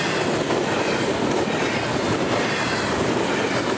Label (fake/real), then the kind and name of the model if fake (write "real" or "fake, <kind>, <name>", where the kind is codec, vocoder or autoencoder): real